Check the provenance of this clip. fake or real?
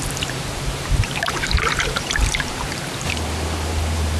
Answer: fake